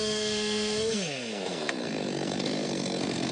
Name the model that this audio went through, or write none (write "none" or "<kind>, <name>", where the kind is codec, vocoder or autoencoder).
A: codec, SNAC